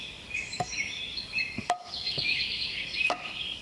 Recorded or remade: remade